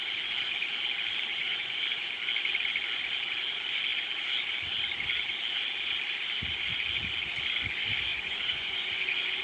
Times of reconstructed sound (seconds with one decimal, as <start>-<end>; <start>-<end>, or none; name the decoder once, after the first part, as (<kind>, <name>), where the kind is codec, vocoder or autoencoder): 1.3-1.8 (vocoder, Vocos); 8.1-9.4